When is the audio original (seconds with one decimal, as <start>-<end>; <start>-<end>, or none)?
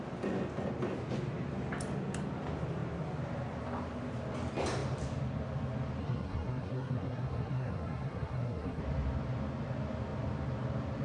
0.0-6.0; 8.8-11.0